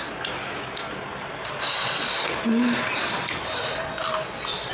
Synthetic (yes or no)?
no